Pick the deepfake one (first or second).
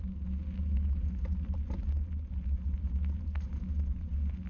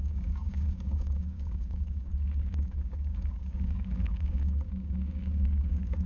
second